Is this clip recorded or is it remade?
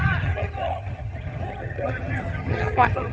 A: remade